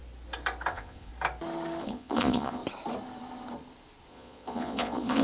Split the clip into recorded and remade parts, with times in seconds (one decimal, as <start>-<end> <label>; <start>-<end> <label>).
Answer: 0.0-0.7 recorded; 0.7-1.1 remade; 1.1-1.8 recorded; 1.8-2.6 remade; 2.6-4.1 recorded; 4.1-5.2 remade